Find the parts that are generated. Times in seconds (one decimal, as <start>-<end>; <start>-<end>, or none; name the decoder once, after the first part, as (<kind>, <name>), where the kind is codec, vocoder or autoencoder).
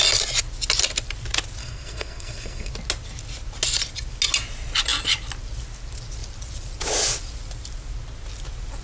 1.6-2.7 (codec, SNAC)